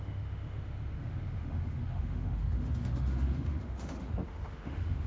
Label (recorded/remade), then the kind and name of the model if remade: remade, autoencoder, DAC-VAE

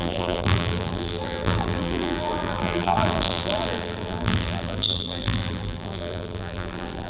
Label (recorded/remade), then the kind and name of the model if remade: remade, vocoder, BigVGAN v2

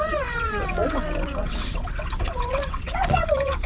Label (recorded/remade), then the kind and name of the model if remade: remade, vocoder, WaveNeXt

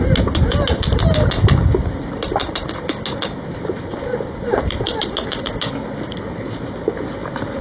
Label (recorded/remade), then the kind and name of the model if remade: recorded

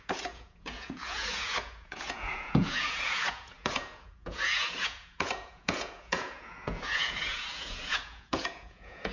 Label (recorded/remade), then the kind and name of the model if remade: remade, vocoder, Vocos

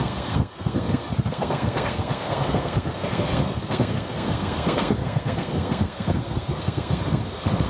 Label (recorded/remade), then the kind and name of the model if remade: remade, codec, SNAC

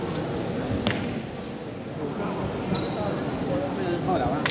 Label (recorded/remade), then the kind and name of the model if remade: recorded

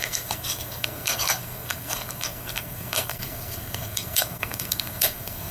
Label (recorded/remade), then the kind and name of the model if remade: remade, codec, SNAC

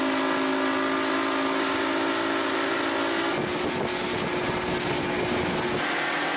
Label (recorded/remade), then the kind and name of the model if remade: recorded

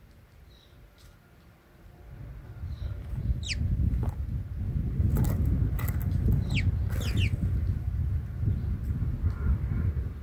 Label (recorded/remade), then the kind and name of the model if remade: recorded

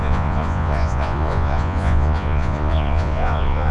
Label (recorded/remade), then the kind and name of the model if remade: remade, vocoder, Vocos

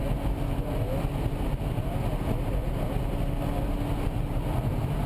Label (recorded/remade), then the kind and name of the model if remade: recorded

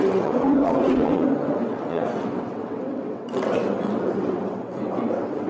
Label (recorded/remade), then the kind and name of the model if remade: remade, vocoder, WaveNeXt